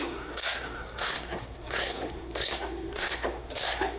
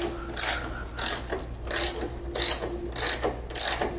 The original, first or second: second